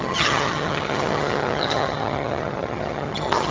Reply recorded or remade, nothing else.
remade